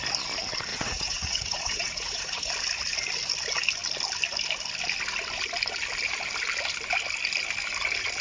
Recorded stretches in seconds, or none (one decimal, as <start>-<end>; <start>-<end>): 0.0-0.7; 2.5-8.2